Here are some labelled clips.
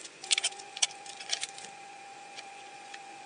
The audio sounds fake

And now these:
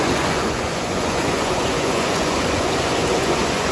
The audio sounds fake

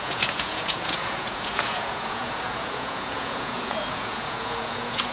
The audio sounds fake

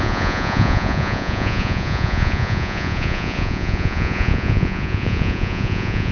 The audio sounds fake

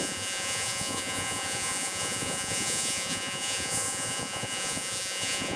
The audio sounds fake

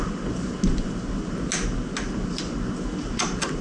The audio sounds real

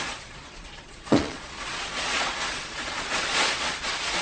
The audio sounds fake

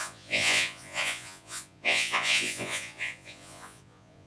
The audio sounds fake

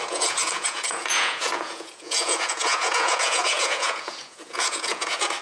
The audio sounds fake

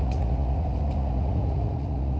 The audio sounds fake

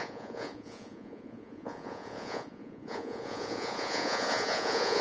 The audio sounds fake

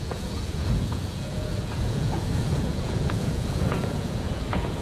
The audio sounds fake